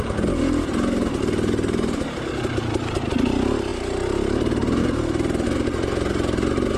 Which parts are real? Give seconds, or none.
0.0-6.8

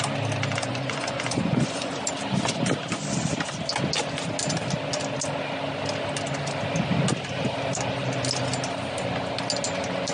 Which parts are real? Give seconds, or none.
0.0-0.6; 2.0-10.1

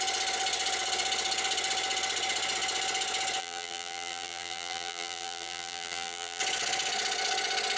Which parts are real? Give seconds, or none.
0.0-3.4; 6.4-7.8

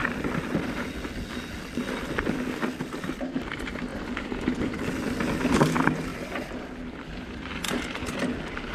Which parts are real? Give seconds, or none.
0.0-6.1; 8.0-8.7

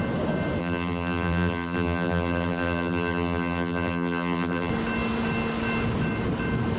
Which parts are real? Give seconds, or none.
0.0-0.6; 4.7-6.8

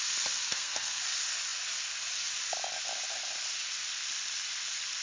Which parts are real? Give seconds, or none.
0.0-0.5; 1.0-5.0